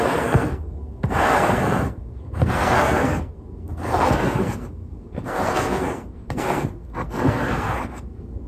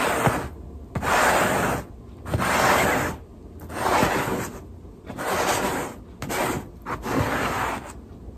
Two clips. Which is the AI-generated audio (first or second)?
first